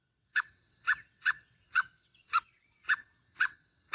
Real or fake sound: fake